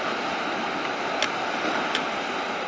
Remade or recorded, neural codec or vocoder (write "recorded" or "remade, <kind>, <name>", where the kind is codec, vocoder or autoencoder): recorded